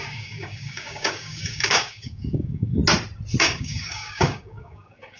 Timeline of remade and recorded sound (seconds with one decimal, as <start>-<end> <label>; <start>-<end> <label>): 0.0-2.8 remade; 2.8-3.4 recorded; 3.4-5.2 remade